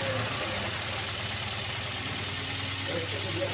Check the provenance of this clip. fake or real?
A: real